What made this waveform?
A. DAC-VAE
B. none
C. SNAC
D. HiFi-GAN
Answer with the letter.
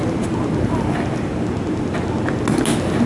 B